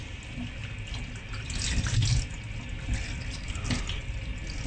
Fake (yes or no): no